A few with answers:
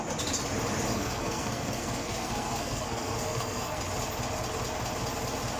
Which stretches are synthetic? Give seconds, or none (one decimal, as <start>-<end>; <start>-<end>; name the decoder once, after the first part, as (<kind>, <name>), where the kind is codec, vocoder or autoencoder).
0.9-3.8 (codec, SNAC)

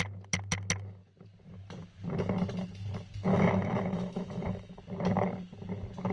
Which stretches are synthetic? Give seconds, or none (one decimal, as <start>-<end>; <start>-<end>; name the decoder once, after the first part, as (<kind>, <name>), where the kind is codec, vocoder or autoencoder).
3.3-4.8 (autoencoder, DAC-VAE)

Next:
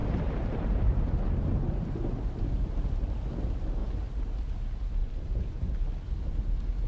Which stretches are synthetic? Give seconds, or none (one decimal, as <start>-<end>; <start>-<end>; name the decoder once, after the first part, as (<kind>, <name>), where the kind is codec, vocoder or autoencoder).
0.0-0.8 (vocoder, BigVGAN v2); 5.0-5.5

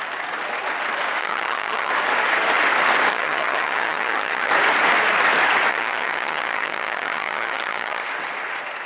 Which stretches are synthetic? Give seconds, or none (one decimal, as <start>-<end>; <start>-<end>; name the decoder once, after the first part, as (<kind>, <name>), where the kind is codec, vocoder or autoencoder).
1.2-1.9 (vocoder, HiFi-GAN); 3.1-4.5; 5.7-8.0

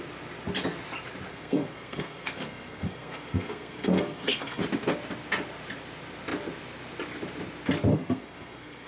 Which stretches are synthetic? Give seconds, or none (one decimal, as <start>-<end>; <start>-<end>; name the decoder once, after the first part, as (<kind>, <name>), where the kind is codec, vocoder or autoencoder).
1.3-4.6 (codec, SNAC); 7.9-8.9